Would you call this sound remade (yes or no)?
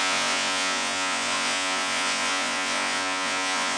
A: yes